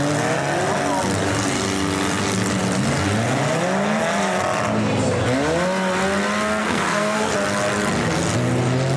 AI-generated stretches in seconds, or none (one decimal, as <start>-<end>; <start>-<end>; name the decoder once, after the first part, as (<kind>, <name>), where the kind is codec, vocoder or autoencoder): 6.6-7.3 (codec, SNAC)